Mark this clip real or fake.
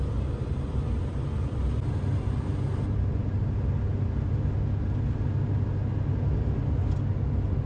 real